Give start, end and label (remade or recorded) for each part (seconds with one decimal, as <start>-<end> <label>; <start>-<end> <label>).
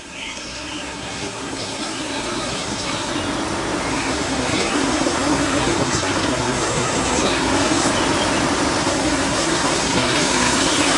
0.0-3.1 remade; 3.1-3.9 recorded; 3.9-7.9 remade; 7.9-8.8 recorded; 8.8-11.0 remade